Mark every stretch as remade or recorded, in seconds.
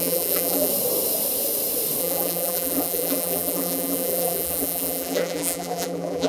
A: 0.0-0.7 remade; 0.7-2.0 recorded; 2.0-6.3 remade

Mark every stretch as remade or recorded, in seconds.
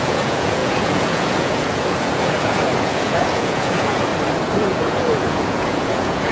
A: 0.0-4.1 remade; 4.1-4.6 recorded; 4.6-6.3 remade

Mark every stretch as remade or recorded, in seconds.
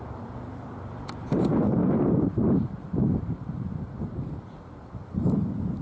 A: 0.0-1.8 recorded; 1.8-5.3 remade; 5.3-5.8 recorded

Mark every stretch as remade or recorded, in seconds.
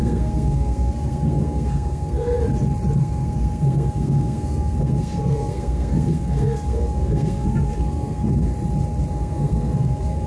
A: 0.0-2.4 remade; 2.4-3.0 recorded; 3.0-8.5 remade; 8.5-9.1 recorded; 9.1-10.3 remade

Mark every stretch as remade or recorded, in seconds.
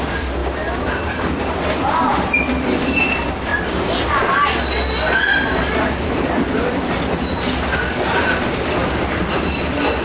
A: 0.0-10.0 recorded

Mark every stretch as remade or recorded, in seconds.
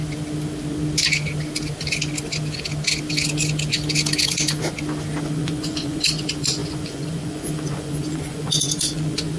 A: 0.0-5.2 recorded; 5.2-9.4 remade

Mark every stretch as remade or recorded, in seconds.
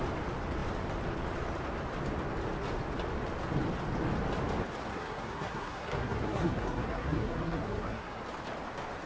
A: 0.0-4.9 recorded; 4.9-8.2 remade; 8.2-9.1 recorded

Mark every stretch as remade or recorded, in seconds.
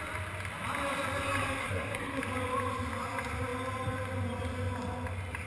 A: 0.0-1.6 recorded; 1.6-2.2 remade; 2.2-5.5 recorded